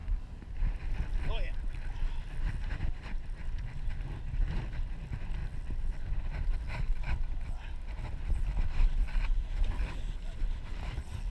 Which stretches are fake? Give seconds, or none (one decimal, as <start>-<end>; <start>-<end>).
2.6-3.9